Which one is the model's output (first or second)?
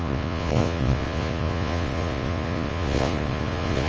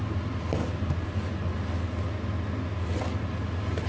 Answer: first